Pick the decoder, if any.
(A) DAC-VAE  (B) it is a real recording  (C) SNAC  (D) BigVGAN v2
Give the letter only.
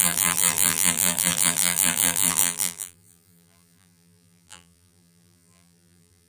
D